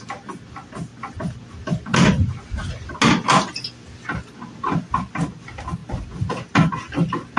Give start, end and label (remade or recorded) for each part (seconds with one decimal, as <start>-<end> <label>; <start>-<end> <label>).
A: 0.0-7.4 recorded